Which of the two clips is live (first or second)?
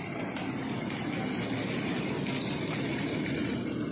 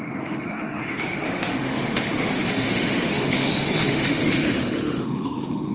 first